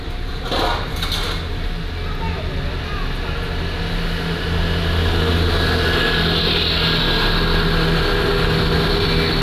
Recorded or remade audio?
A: recorded